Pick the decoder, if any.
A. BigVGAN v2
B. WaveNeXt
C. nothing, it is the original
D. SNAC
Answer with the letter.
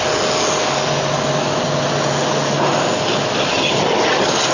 C